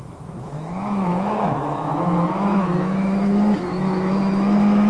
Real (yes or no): no